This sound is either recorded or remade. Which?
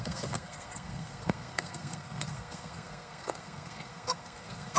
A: remade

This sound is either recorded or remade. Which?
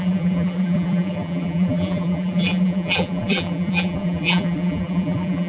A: remade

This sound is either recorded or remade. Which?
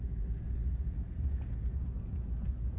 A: remade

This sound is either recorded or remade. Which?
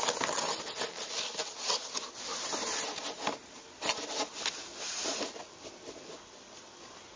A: recorded